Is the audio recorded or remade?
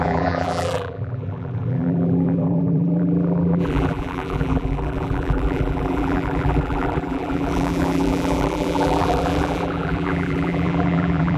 remade